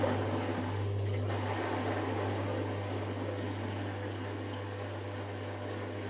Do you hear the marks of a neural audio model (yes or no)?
no